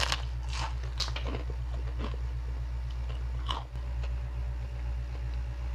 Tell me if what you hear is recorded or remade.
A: recorded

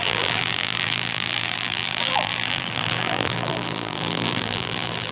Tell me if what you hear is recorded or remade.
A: remade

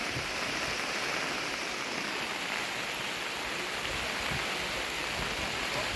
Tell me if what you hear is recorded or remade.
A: recorded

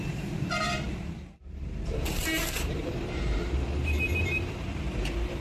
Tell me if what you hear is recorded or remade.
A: remade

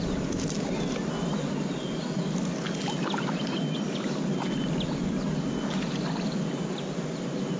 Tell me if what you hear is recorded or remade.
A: recorded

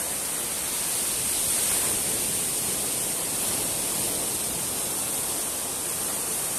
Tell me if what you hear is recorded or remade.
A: remade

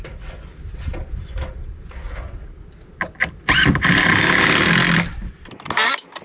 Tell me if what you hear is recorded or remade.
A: recorded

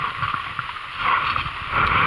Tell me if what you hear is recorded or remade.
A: recorded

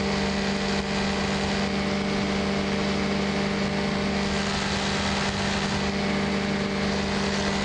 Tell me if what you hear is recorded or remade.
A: recorded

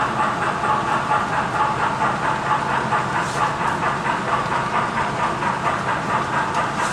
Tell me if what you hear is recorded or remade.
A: remade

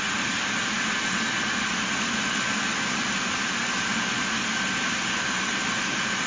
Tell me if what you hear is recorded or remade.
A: recorded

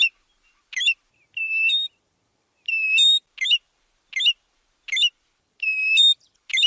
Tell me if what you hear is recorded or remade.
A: remade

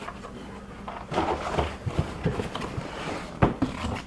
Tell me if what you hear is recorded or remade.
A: recorded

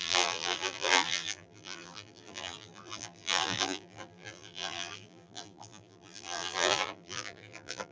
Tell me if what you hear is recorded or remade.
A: remade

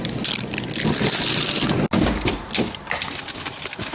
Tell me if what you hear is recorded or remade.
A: recorded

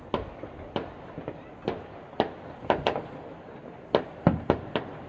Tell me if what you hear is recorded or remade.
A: recorded